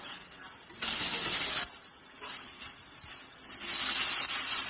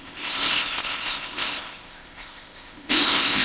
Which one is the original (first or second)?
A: first